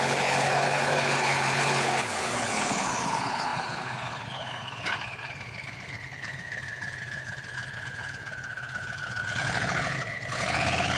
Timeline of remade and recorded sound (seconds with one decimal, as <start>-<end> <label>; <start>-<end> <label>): 0.0-11.0 remade